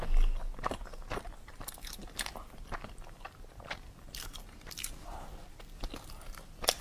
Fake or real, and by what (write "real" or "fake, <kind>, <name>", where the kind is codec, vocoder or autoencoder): real